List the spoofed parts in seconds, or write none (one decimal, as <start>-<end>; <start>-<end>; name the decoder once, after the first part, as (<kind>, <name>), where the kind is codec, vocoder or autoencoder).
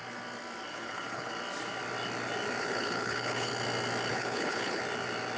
0.7-1.3 (codec, HILCodec); 2.6-3.5; 4.1-4.8